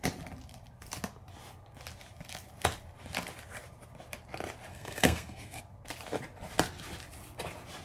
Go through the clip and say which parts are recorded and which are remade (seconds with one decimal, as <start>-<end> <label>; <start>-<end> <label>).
0.0-4.7 recorded; 4.7-5.6 remade; 5.6-7.8 recorded